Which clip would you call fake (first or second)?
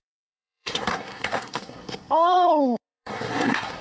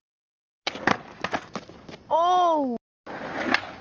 first